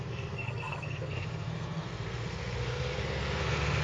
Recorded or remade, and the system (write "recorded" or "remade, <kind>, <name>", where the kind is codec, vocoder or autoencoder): remade, codec, SNAC